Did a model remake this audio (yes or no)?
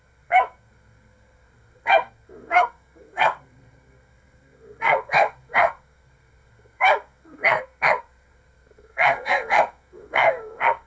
yes